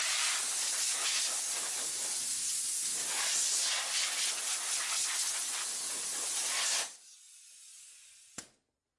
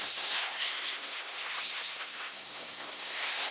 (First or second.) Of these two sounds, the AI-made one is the second